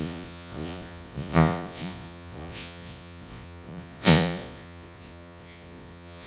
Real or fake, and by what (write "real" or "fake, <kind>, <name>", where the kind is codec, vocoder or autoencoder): fake, vocoder, Vocos